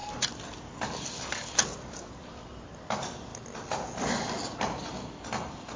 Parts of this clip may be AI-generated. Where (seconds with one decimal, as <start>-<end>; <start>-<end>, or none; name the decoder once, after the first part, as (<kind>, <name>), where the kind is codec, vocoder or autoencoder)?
none